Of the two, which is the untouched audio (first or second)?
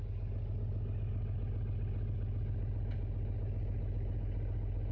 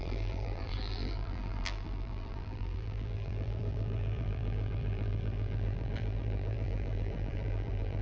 first